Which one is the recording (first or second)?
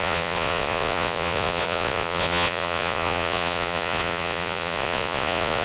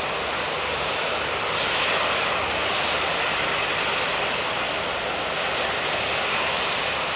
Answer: second